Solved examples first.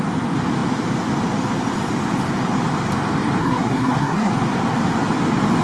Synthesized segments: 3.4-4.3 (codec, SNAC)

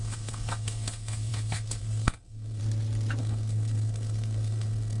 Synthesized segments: 0.0-2.6 (codec, SNAC); 3.2-5.0

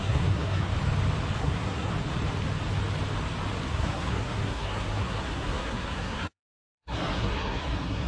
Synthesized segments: 0.0-0.7 (codec, SNAC); 1.4-1.9; 3.7-8.1